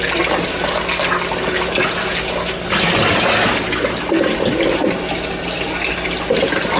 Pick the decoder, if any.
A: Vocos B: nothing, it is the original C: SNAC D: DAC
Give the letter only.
B